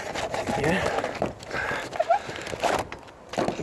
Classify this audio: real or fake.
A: real